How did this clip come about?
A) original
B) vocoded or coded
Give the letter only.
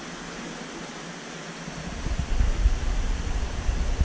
A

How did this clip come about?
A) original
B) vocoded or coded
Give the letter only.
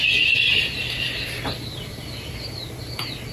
A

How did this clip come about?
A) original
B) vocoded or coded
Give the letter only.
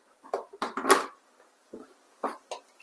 A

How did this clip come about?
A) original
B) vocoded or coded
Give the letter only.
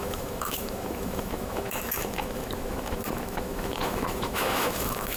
B